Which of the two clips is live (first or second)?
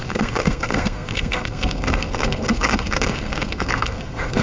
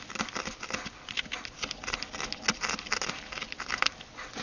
second